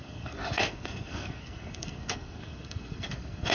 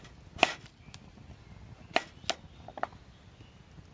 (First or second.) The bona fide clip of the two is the second